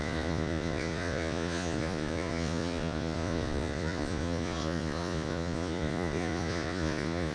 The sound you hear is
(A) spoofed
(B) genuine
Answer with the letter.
A